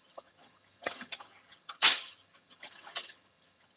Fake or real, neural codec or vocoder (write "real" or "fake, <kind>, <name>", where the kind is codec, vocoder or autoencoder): fake, vocoder, HiFi-GAN